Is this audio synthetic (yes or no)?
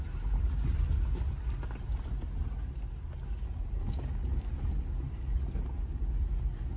no